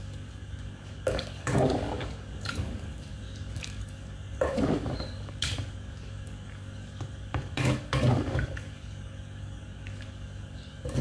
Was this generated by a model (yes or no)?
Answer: yes